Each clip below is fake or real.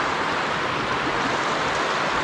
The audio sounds real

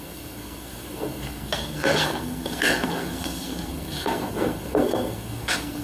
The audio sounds fake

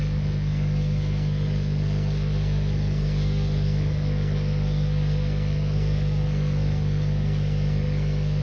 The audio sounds fake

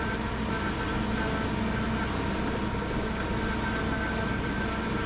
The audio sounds real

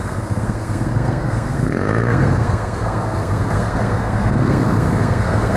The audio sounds fake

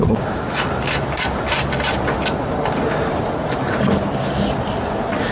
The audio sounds real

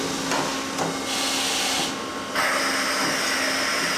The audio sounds real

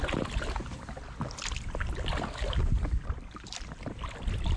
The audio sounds real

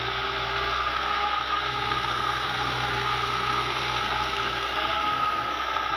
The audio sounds fake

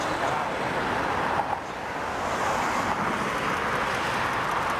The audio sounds real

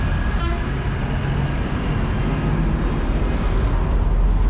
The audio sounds real